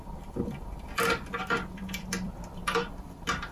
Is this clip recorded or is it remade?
remade